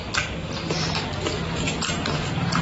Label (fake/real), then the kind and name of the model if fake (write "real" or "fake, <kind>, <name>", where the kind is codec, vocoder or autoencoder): real